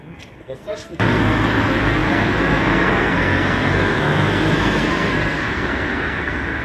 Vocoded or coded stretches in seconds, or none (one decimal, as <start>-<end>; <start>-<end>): 0.0-6.6